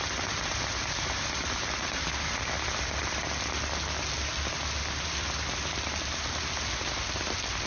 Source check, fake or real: real